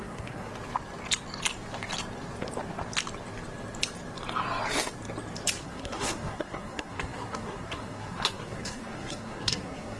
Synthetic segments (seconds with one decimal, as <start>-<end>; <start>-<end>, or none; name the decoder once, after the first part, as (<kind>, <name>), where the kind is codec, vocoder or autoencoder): 0.0-0.5 (codec, SNAC); 5.6-10.0